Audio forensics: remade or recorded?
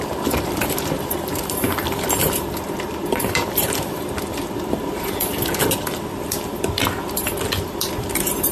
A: remade